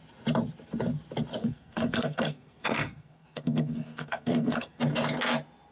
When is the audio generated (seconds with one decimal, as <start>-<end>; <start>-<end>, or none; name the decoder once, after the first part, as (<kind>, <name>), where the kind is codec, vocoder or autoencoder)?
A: 1.4-4.8 (codec, SNAC)